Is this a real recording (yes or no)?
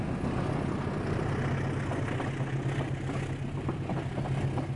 yes